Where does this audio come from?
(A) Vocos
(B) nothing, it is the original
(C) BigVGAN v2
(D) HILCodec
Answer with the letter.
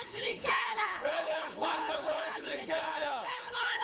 D